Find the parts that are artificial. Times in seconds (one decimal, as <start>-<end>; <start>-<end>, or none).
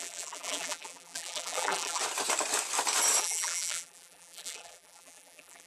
0.0-2.0; 3.2-5.7